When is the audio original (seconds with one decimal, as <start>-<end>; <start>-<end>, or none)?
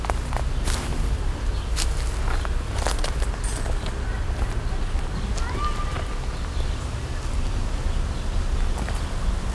0.0-9.5